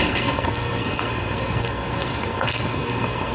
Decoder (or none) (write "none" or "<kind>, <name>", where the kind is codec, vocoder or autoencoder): codec, SNAC